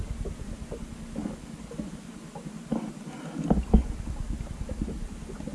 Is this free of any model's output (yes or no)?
yes